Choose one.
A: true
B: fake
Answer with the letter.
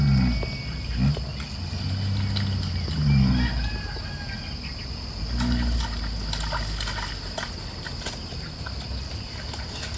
A